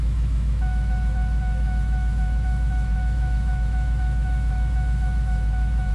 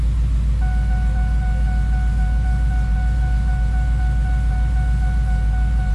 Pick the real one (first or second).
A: second